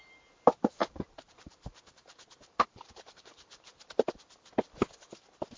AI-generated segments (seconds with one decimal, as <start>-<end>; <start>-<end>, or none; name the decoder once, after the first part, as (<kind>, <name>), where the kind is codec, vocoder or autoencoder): 0.8-4.2 (vocoder, BigVGAN v2)